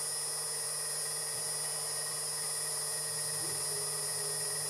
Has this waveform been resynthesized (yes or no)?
no